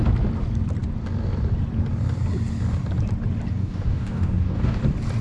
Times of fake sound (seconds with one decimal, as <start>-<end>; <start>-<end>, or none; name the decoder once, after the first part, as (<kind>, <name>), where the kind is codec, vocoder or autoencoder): 3.6-4.8 (codec, DAC)